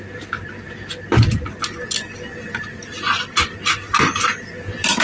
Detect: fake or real fake